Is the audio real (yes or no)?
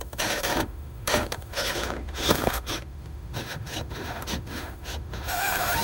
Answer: no